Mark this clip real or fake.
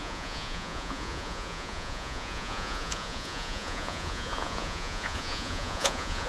fake